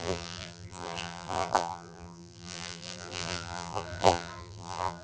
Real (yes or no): no